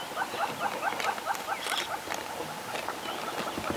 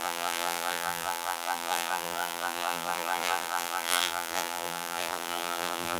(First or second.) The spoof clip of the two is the second